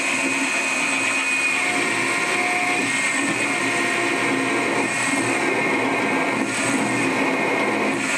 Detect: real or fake real